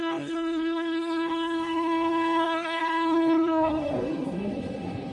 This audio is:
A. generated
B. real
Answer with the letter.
A